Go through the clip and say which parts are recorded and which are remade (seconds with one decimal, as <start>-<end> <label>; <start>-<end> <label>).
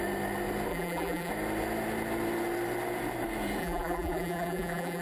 0.0-0.7 recorded; 0.7-1.3 remade; 1.3-3.6 recorded; 3.6-5.0 remade